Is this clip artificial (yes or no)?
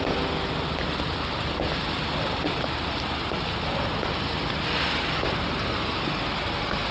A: no